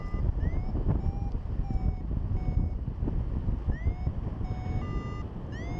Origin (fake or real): real